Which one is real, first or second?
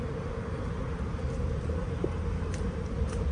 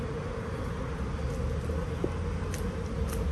second